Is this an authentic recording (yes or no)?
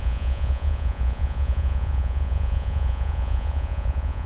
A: no